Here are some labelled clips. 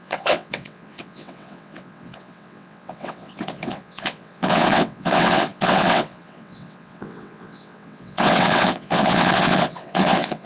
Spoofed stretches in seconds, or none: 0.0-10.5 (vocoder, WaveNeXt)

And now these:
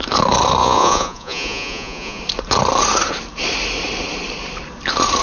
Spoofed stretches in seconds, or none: 0.6-2.2 (vocoder, Vocos)

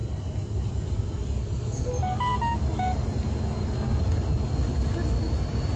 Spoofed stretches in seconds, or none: 1.4-1.9 (codec, SNAC)

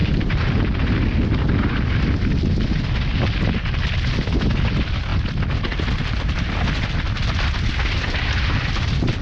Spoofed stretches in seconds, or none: none

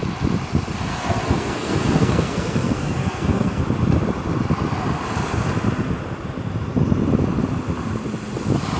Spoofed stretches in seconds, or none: 0.9-3.6 (codec, SNAC)

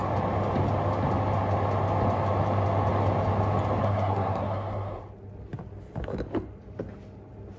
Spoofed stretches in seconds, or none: 3.8-5.0 (codec, SNAC)

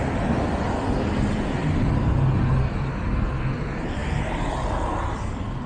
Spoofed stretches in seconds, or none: none

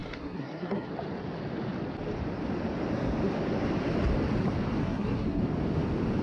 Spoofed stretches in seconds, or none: 0.0-0.9 (codec, SNAC); 4.8-5.4